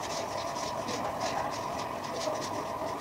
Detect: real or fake real